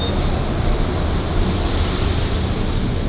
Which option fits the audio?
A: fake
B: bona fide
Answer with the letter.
B